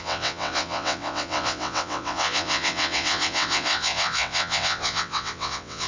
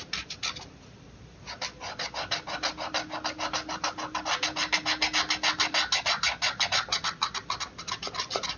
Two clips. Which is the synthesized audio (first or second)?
first